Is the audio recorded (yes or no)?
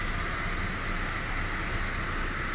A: yes